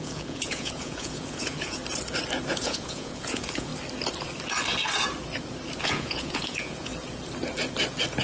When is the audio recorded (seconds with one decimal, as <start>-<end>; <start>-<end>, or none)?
1.8-2.5; 3.7-5.8; 6.9-8.2